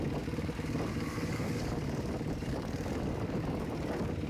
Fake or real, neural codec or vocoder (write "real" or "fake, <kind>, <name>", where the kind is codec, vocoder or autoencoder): fake, codec, DAC